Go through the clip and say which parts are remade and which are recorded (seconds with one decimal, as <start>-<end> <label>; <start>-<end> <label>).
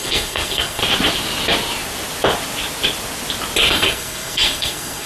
0.0-0.8 remade; 0.8-3.7 recorded; 3.7-5.1 remade